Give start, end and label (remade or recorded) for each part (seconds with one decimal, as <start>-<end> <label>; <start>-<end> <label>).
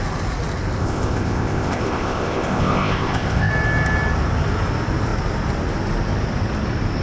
0.0-0.8 recorded; 0.8-3.5 remade; 3.5-7.0 recorded